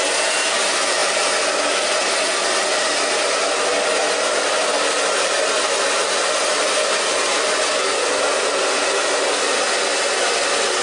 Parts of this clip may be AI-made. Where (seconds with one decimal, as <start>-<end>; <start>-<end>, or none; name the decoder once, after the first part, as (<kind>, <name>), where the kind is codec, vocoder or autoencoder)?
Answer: none